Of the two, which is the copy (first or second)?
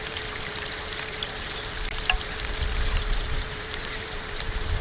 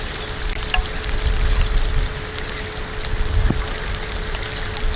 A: first